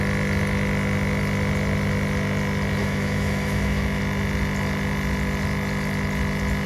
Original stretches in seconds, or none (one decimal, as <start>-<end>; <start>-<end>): 0.0-2.8; 4.0-6.7